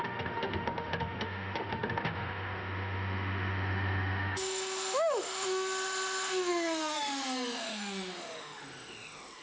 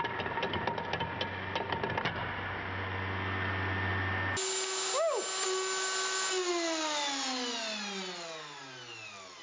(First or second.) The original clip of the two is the second